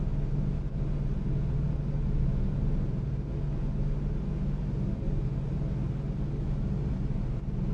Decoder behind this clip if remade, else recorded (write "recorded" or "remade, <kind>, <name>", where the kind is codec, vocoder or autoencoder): recorded